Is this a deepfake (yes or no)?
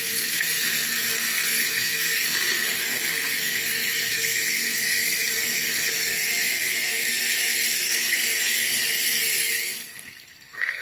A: yes